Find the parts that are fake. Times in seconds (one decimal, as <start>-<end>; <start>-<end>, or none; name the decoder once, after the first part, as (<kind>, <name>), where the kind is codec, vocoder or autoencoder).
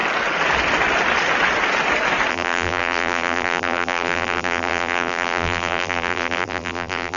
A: 2.3-7.2 (vocoder, BigVGAN v2)